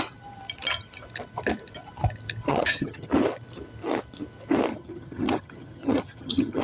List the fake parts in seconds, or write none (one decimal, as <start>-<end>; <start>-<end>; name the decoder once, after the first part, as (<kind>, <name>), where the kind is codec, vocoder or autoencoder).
2.5-3.1 (vocoder, HiFi-GAN); 4.7-6.6